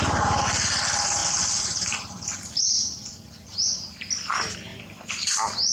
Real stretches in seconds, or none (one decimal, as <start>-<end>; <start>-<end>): 0.0-1.2; 4.0-4.7